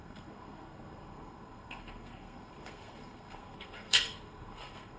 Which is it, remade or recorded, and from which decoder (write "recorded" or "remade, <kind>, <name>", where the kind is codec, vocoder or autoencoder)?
remade, codec, SNAC